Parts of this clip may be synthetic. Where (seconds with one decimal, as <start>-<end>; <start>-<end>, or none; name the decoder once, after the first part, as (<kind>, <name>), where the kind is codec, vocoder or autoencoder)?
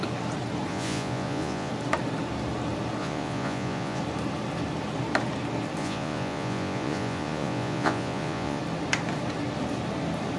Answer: 0.7-1.7 (vocoder, Vocos); 3.0-4.0; 5.8-8.6